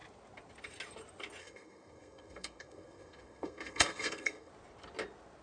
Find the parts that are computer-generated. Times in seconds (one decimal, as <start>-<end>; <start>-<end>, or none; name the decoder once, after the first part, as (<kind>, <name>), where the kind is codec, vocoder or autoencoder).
1.4-4.5 (codec, SNAC)